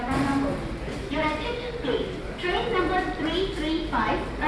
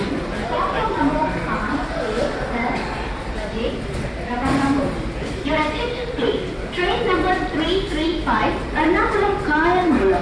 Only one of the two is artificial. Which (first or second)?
second